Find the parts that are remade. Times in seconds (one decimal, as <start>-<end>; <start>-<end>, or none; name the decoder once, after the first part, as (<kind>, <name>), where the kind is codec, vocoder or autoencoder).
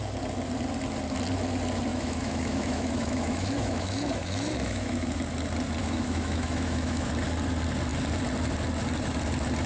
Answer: 1.9-5.2 (autoencoder, DAC-VAE); 5.8-7.1